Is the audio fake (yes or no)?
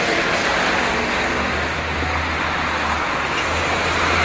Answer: no